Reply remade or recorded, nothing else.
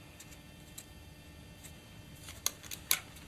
recorded